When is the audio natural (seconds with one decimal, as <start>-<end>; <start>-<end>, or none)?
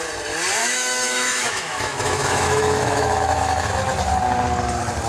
0.0-0.6; 3.7-5.1